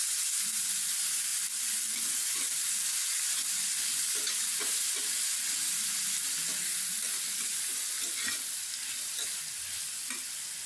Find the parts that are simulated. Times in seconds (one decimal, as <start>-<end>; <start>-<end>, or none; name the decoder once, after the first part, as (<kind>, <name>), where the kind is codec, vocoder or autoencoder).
none